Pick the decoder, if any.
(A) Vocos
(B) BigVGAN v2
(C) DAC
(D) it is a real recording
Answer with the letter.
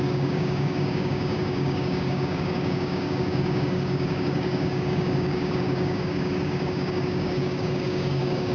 C